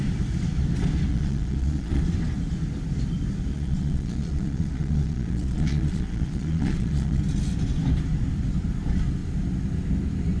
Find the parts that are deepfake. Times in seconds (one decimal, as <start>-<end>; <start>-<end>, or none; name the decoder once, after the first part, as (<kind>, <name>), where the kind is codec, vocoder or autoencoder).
1.1-2.0 (vocoder, Vocos); 3.5-7.2